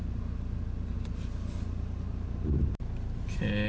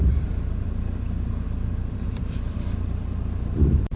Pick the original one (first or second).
first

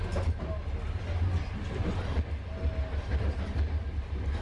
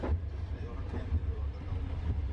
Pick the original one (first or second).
first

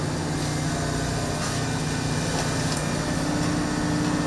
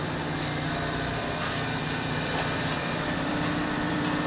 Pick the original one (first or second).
first